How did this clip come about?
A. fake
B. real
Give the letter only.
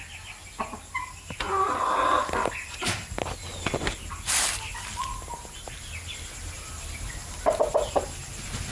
B